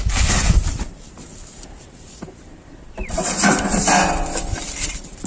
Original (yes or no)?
yes